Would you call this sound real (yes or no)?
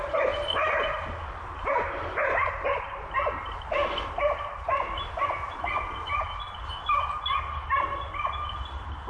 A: yes